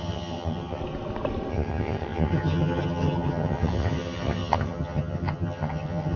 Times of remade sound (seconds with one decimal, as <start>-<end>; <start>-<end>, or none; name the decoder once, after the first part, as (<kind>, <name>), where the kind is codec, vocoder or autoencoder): 0.0-0.8 (vocoder, HiFi-GAN); 1.5-6.2